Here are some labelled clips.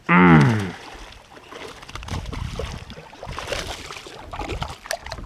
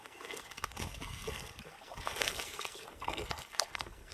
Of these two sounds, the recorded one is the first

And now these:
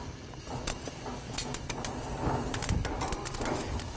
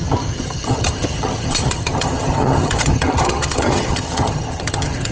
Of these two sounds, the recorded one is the first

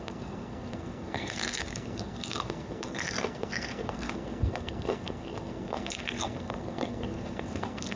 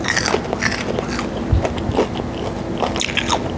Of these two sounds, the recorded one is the second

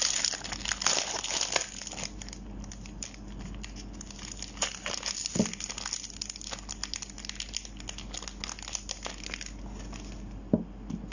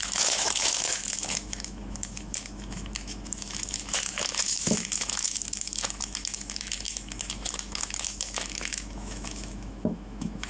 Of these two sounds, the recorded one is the first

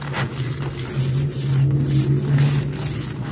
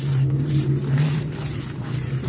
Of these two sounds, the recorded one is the first